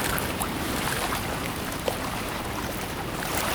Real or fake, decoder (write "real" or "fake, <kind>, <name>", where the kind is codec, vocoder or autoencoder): fake, vocoder, BigVGAN v2